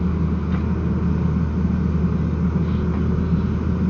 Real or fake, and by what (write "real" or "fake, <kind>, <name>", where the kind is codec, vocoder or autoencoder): real